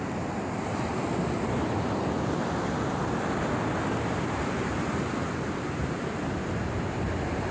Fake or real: real